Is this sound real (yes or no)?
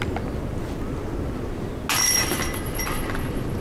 yes